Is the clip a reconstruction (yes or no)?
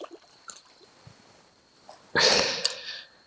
no